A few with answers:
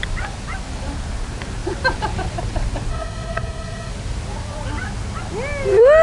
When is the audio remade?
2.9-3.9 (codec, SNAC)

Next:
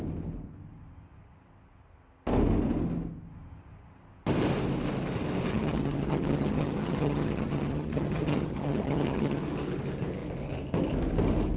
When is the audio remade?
5.5-9.4 (vocoder, HiFi-GAN)

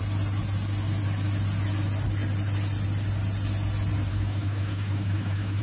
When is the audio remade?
4.1-5.6 (autoencoder, DAC-VAE)

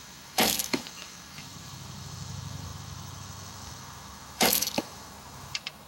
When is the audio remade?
0.0-5.9 (autoencoder, DAC-VAE)

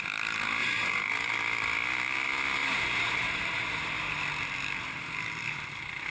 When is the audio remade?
0.6-1.3 (vocoder, BigVGAN v2); 2.6-3.8

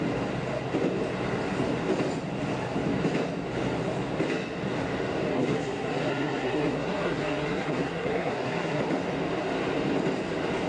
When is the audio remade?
5.3-8.8 (codec, SNAC)

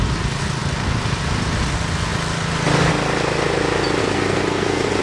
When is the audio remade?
4.0-5.0 (codec, SNAC)

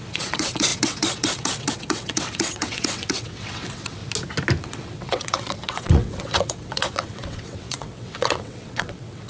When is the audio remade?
0.0-4.0 (vocoder, WaveNeXt); 4.6-9.3